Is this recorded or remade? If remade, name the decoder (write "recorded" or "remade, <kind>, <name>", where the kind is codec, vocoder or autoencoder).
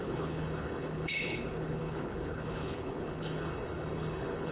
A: remade, codec, HILCodec